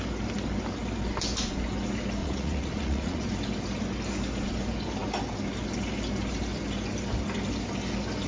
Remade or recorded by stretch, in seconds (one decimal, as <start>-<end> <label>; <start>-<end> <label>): 0.0-2.2 recorded; 2.2-3.3 remade; 3.3-8.3 recorded